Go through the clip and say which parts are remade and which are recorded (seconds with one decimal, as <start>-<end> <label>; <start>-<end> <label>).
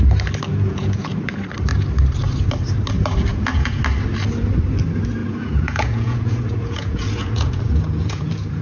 0.0-0.5 recorded; 0.5-1.1 remade; 1.1-3.3 recorded; 3.3-3.8 remade; 3.8-5.2 recorded; 5.2-8.6 remade